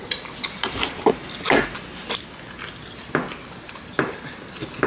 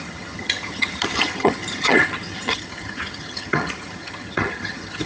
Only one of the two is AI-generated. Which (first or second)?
second